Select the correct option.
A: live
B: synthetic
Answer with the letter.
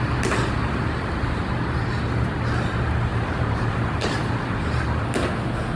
A